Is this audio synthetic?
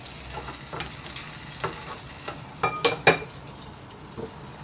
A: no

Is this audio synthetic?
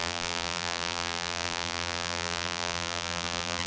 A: yes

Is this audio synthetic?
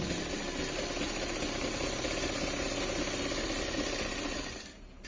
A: no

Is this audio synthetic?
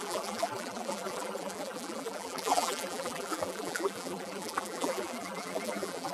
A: yes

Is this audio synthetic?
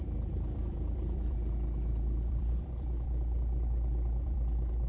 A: yes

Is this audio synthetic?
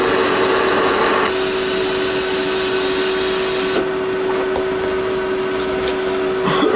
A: no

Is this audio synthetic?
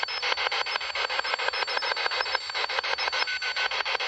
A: no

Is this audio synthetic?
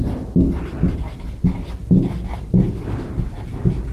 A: no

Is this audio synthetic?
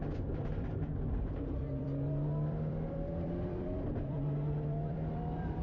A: yes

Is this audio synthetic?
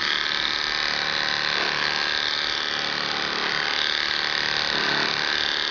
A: no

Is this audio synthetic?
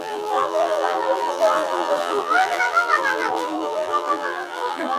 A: yes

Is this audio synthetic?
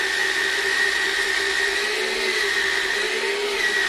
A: no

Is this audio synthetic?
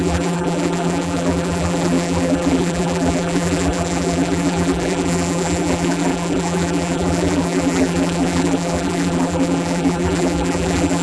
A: yes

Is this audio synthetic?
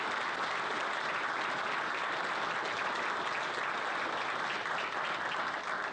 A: no